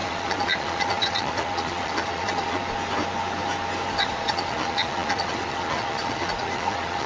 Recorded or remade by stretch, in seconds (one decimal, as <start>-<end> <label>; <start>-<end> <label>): 0.0-2.6 remade; 2.6-4.0 recorded; 4.0-7.1 remade